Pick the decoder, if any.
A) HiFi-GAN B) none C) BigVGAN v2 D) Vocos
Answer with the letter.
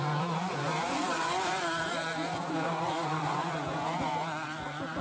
D